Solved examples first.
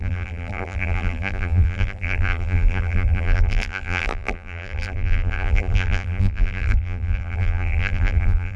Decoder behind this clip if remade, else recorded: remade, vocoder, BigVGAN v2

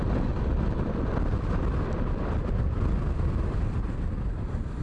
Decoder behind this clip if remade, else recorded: recorded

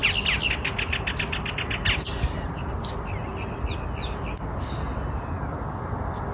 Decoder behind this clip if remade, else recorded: recorded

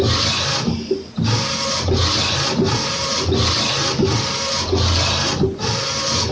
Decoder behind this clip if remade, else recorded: recorded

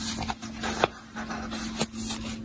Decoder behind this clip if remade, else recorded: recorded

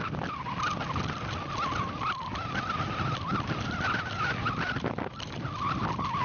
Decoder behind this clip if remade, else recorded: recorded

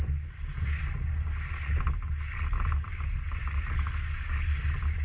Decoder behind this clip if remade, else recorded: recorded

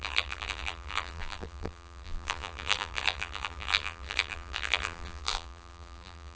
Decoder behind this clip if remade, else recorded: remade, vocoder, BigVGAN v2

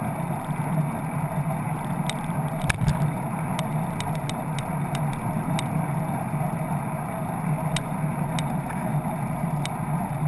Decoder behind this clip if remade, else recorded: recorded